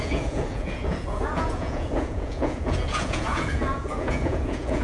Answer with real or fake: fake